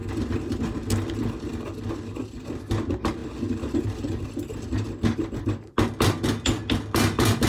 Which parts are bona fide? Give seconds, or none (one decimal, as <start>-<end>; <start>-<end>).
0.0-7.5